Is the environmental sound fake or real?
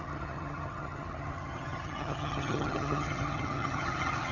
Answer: fake